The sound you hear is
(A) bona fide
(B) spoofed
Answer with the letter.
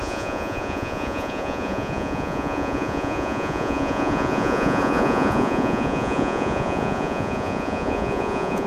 B